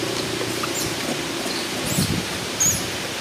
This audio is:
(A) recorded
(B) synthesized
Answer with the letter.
A